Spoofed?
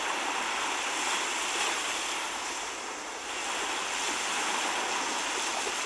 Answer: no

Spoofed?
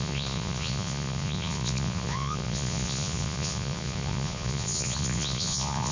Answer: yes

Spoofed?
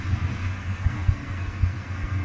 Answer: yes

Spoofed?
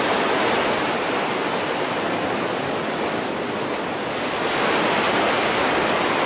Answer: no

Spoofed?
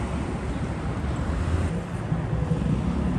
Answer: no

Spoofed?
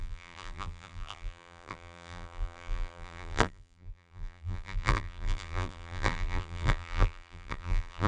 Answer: yes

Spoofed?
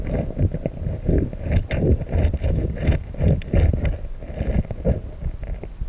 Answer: no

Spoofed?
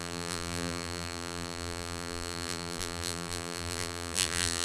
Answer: yes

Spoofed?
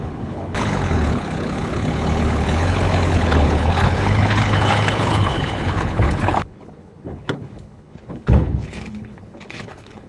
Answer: yes